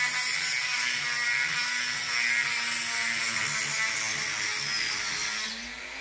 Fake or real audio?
real